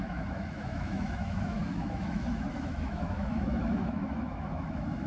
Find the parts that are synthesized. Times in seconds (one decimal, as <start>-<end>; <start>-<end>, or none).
0.0-5.1